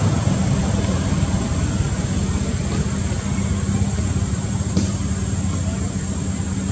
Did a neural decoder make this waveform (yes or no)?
no